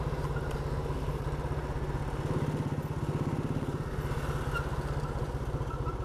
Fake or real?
real